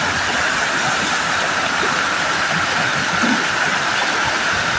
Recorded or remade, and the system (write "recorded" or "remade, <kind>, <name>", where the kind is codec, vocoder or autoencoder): recorded